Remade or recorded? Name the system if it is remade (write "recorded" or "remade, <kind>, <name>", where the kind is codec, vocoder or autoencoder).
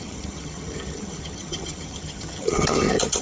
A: remade, vocoder, HiFi-GAN